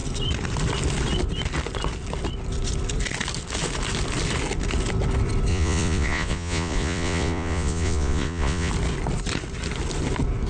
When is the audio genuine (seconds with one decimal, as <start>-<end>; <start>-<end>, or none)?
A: 0.0-5.5; 8.7-10.5

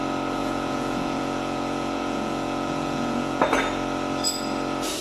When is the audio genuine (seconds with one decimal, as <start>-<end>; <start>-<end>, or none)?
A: 0.0-0.4; 3.4-5.0

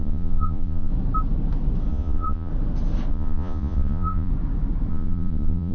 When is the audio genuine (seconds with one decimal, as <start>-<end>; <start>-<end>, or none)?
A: 0.9-1.9; 2.5-3.1; 4.3-4.9

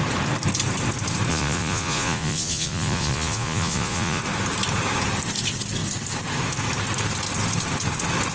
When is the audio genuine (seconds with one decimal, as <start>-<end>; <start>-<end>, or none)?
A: 0.0-1.3; 4.2-8.3